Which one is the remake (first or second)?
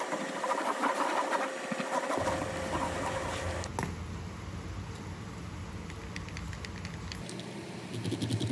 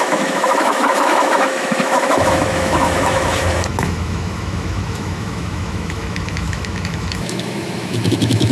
second